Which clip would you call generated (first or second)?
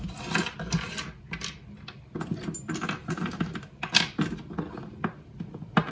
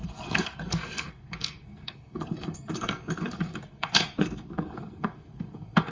second